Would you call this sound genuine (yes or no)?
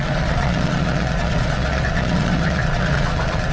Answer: no